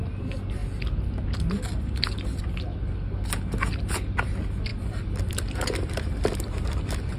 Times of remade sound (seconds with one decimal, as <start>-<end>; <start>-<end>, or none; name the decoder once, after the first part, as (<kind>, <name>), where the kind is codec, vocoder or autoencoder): 4.7-7.2 (vocoder, BigVGAN v2)